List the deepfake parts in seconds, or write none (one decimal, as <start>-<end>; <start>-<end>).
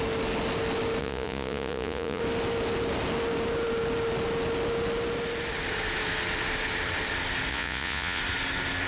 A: 1.0-2.2; 7.5-8.2